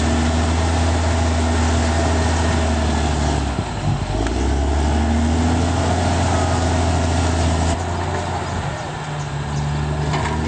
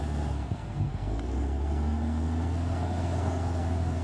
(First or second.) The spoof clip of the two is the second